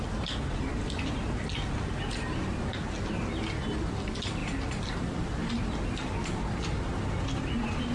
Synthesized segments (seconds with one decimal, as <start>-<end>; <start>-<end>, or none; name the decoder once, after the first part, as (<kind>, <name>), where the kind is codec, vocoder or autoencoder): none